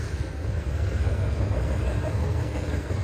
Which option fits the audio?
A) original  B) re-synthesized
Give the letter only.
B